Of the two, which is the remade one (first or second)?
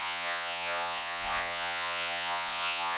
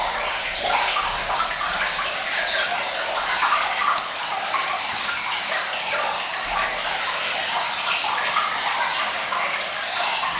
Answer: first